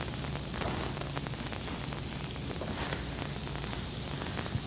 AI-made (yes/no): no